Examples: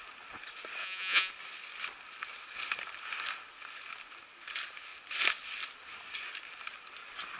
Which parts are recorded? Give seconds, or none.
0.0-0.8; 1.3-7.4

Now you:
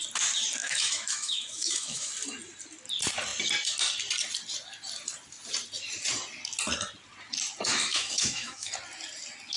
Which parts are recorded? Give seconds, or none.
0.0-0.6; 2.1-7.7; 8.7-9.6

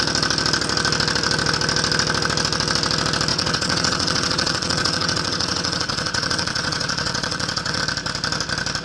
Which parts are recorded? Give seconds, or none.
0.0-3.3; 7.8-8.8

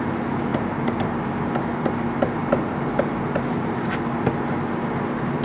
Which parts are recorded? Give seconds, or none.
0.0-2.4; 3.9-5.4

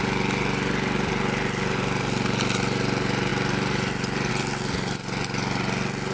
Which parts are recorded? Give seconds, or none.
0.0-3.3; 4.3-6.1

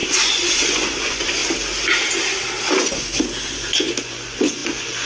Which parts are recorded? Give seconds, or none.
1.4-2.7